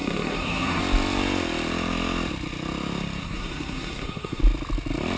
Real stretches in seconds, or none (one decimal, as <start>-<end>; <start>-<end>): 0.8-3.2; 4.4-5.2